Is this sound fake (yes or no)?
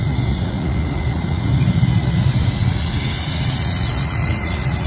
yes